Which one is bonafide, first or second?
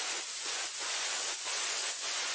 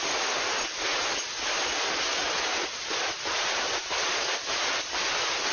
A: second